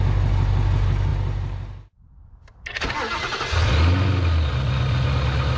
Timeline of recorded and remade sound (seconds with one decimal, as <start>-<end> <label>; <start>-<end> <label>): 0.0-5.6 recorded